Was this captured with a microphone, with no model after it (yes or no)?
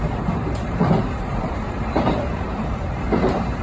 no